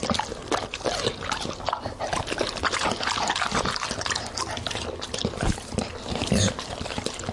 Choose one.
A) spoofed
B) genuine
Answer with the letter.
B